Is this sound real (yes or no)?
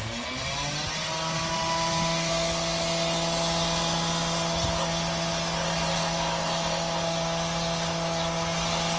yes